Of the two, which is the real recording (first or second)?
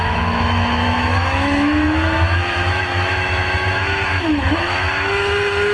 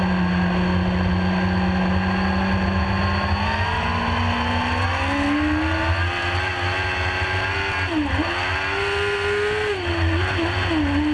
second